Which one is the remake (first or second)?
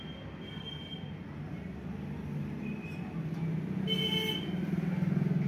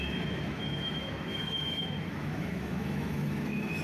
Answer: second